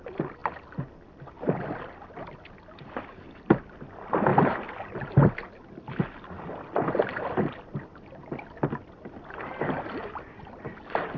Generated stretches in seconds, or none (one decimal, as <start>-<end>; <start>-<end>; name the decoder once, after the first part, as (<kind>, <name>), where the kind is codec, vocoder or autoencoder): none